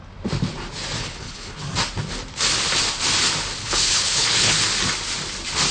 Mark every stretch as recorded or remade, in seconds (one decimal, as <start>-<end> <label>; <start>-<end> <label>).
0.0-1.0 recorded; 1.0-1.6 remade; 1.6-3.6 recorded; 3.6-4.6 remade; 4.6-5.7 recorded